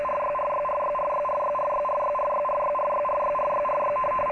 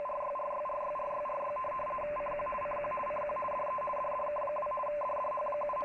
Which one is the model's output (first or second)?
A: second